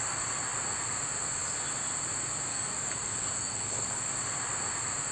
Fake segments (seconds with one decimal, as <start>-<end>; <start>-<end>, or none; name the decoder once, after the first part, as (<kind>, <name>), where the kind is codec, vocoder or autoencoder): 2.5-4.1 (codec, DAC)